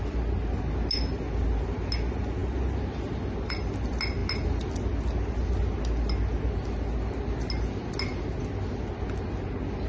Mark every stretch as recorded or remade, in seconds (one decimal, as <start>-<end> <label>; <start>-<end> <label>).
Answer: 0.0-9.9 recorded

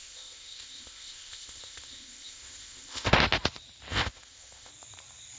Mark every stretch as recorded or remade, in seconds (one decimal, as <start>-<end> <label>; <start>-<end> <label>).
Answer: 0.0-3.2 remade; 3.2-3.9 recorded; 3.9-4.7 remade; 4.7-5.4 recorded